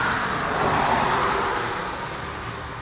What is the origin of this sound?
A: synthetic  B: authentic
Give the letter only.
B